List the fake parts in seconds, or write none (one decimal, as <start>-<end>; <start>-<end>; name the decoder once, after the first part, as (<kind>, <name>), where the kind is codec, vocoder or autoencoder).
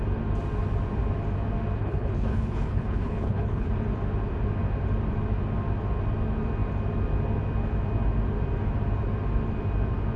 1.8-3.7 (codec, HILCodec)